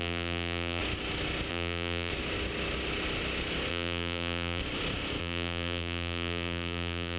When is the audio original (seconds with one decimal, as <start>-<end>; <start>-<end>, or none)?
0.8-1.5; 2.1-3.7; 4.6-5.2